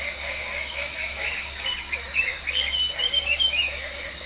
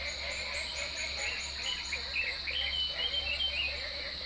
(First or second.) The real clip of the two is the second